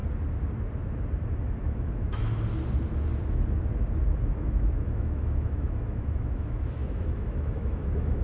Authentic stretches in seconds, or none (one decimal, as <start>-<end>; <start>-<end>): 0.0-1.4; 2.2-4.2